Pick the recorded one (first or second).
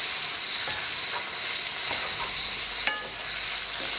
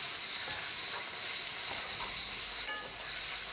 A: first